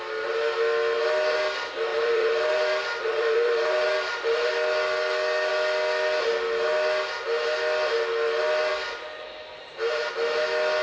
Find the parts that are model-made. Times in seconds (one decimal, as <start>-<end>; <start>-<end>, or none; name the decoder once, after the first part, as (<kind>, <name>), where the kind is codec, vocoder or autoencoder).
1.9-4.5 (vocoder, BigVGAN v2); 9.5-10.1